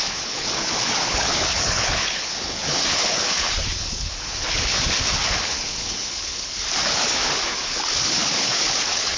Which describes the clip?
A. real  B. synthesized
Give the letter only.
B